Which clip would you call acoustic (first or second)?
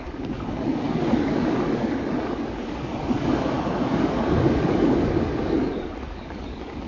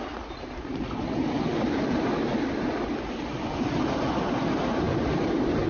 second